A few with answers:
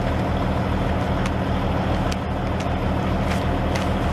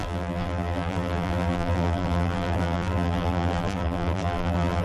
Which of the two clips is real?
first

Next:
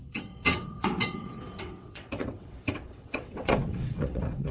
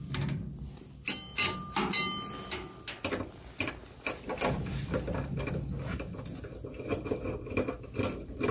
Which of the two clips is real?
second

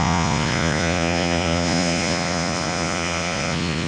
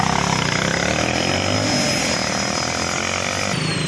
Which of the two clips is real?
second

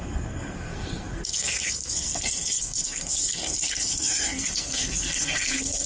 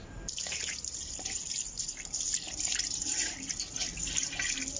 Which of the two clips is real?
second